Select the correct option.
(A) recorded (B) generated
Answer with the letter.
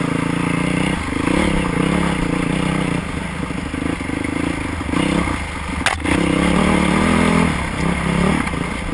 A